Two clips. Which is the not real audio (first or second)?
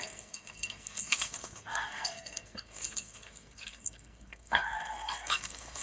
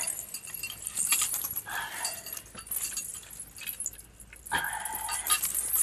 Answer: first